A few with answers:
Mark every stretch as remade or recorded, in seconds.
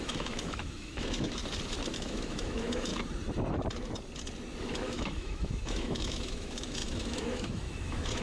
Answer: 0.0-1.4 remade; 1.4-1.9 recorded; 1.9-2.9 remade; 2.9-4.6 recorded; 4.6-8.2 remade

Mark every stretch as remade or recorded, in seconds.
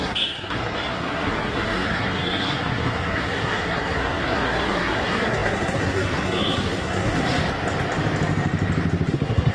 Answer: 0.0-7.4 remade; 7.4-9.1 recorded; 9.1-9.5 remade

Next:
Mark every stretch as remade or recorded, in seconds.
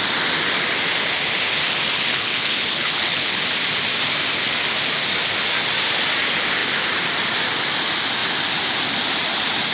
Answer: 0.0-2.1 recorded; 2.1-3.4 remade; 3.4-9.7 recorded